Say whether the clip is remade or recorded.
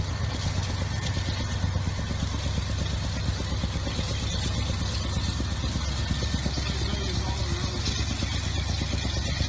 recorded